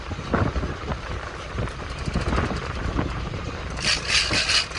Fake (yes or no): no